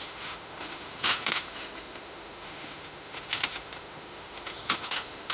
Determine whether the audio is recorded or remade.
remade